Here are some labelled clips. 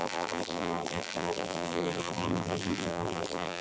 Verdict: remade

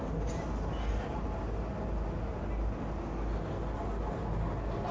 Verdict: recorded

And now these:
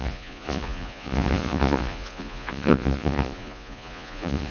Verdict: remade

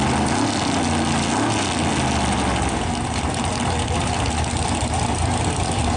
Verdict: recorded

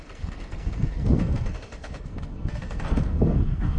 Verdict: remade